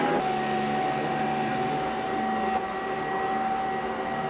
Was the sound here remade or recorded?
recorded